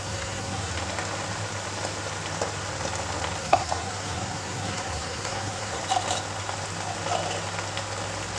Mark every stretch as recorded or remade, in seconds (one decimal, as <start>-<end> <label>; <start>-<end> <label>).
0.0-0.7 remade; 0.7-3.4 recorded; 3.4-5.8 remade; 5.8-8.4 recorded